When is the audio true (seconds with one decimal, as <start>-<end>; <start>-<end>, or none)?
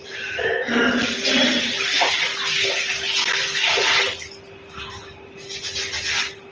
0.0-6.5